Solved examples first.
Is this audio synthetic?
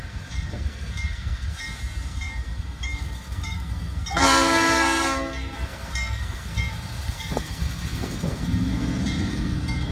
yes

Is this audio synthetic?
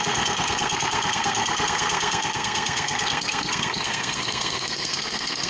yes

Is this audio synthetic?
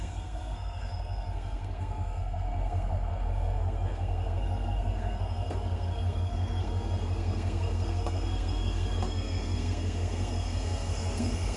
yes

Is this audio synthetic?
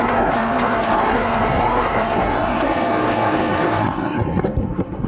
yes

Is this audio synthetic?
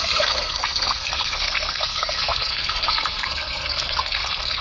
yes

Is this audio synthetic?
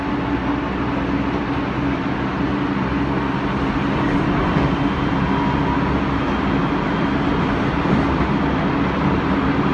no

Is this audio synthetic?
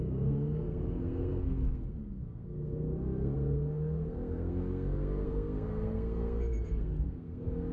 yes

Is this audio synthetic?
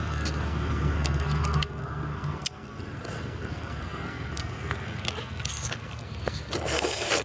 yes